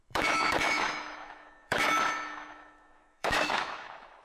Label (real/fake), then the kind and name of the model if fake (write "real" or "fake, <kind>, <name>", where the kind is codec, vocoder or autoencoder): fake, autoencoder, DAC-VAE